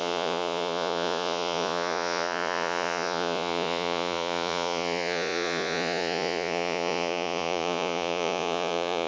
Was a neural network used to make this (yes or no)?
yes